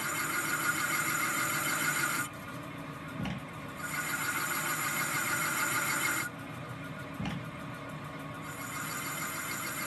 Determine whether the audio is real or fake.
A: fake